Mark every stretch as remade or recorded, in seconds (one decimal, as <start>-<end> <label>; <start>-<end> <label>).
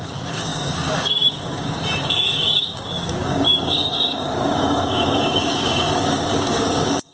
0.0-7.1 remade